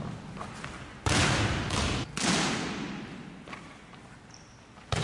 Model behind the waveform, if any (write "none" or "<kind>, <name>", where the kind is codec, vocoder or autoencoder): none